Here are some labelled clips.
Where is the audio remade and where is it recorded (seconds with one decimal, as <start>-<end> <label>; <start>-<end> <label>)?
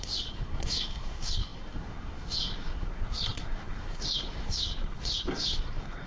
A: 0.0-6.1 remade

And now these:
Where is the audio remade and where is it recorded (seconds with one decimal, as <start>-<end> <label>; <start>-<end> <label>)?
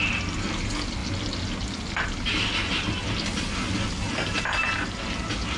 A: 0.0-5.6 recorded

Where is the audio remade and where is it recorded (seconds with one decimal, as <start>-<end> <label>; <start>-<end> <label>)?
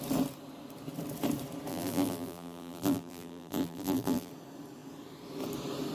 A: 0.0-1.7 recorded; 1.7-4.3 remade; 4.3-5.9 recorded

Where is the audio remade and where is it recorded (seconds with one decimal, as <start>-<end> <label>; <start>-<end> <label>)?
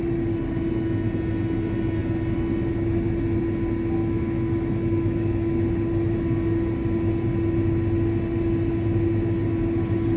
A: 0.0-4.0 recorded; 4.0-5.6 remade; 5.6-10.2 recorded